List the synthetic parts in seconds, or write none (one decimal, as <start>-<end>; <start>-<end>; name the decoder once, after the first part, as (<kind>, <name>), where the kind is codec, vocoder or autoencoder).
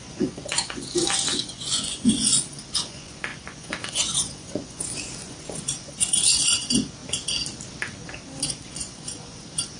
0.0-7.0 (vocoder, Vocos); 8.5-9.8